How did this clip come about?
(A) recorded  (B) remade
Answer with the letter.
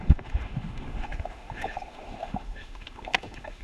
B